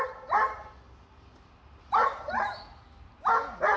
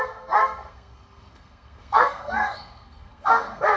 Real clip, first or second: first